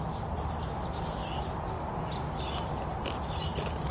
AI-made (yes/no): yes